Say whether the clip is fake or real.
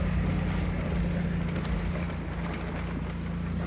real